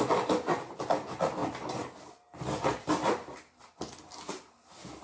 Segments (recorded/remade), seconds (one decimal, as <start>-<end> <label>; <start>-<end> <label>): 0.0-5.0 recorded